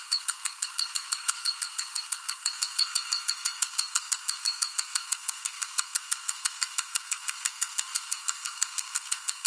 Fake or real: fake